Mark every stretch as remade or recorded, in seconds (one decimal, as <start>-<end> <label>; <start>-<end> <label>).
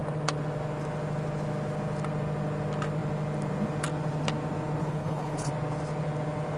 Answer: 0.0-4.8 recorded; 4.8-5.5 remade; 5.5-6.6 recorded